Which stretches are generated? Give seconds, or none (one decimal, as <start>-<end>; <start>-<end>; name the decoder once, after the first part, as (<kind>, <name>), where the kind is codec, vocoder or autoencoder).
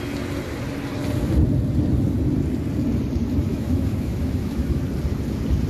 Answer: 3.5-4.8 (autoencoder, DAC-VAE)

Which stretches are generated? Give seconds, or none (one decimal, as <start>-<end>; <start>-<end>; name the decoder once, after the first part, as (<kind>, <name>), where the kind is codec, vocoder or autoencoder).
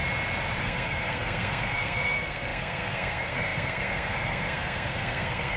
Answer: 0.6-5.6 (codec, SNAC)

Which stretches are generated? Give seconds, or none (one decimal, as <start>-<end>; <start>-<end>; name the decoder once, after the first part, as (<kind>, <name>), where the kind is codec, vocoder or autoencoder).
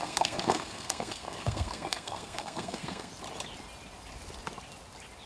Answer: 0.0-3.1 (codec, SNAC)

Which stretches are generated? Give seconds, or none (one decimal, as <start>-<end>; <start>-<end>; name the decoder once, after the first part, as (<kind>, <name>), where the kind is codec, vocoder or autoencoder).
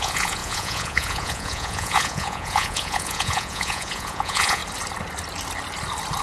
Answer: 0.0-4.6 (vocoder, Vocos)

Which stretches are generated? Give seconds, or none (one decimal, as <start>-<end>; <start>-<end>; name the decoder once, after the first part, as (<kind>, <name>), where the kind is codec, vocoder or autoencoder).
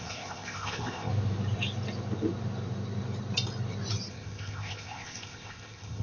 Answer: 0.0-1.1 (codec, ZipCodec); 4.1-6.0